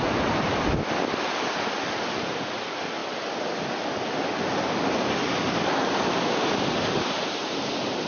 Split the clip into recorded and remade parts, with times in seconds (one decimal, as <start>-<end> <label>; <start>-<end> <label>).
0.0-8.1 recorded